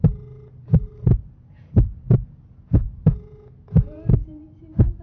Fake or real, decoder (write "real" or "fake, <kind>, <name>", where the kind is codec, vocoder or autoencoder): fake, vocoder, Vocos